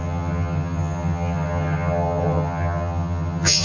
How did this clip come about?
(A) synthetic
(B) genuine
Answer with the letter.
A